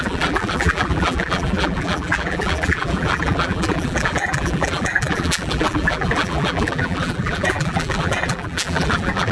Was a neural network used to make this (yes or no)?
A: yes